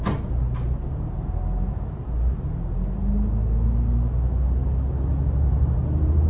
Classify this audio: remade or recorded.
recorded